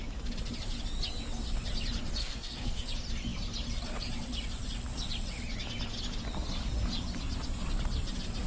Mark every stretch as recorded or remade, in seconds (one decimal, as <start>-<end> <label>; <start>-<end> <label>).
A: 0.0-2.2 recorded; 2.2-2.9 remade; 2.9-8.5 recorded

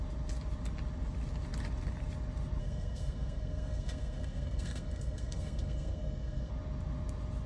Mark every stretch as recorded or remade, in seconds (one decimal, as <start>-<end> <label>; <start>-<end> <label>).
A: 0.0-2.6 recorded; 2.6-6.5 remade; 6.5-7.5 recorded

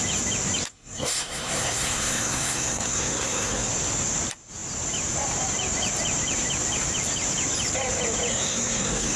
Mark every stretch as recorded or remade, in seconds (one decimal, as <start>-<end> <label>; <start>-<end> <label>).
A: 0.0-0.7 recorded; 0.7-3.7 remade; 3.7-8.3 recorded; 8.3-9.2 remade

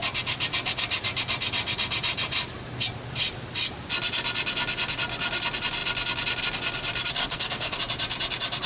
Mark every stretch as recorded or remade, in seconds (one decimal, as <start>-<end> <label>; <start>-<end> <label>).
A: 0.0-7.2 recorded; 7.2-7.8 remade; 7.8-8.7 recorded

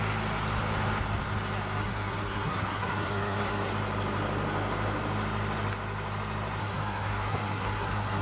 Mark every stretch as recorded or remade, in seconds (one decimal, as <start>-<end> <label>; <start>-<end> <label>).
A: 0.0-1.8 recorded; 1.8-3.7 remade; 3.7-6.6 recorded; 6.6-8.2 remade

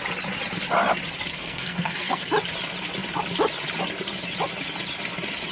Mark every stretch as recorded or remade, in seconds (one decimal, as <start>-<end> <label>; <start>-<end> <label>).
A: 0.0-1.3 recorded; 1.3-2.3 remade; 2.3-5.5 recorded